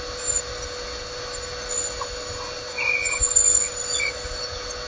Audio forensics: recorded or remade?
recorded